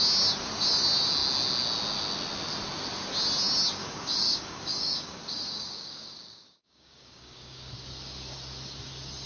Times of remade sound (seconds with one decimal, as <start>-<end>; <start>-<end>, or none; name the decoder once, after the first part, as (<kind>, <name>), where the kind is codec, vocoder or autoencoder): 3.8-7.7 (codec, DAC)